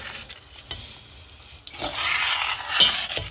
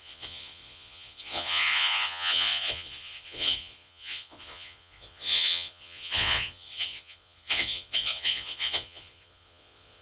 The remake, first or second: second